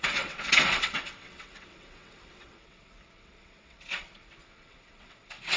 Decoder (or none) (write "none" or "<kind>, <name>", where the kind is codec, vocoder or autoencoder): vocoder, WaveNeXt